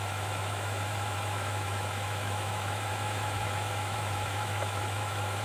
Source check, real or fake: fake